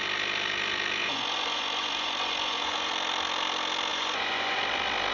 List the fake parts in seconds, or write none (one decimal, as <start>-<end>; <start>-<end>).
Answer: 1.0-2.9; 3.9-4.6